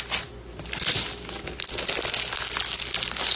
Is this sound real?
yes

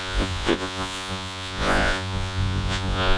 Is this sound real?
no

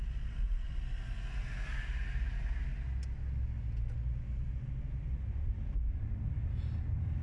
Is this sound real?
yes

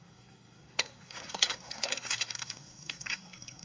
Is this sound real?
no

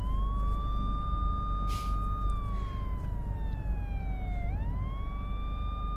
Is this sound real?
yes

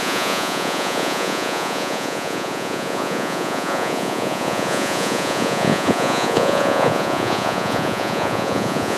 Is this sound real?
no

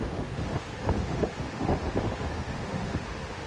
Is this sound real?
no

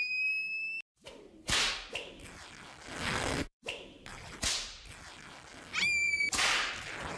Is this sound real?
yes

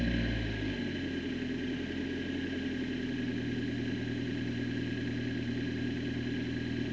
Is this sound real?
yes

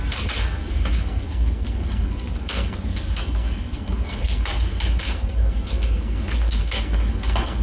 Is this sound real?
no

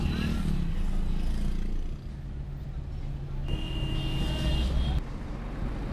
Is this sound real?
yes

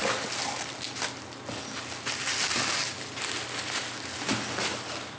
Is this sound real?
yes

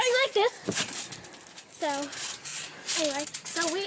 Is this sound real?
yes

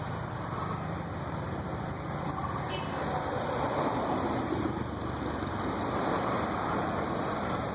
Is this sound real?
no